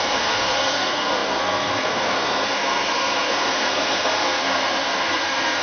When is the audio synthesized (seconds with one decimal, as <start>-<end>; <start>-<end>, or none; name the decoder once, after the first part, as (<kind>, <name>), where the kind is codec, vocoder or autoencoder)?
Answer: 0.0-5.6 (codec, SNAC)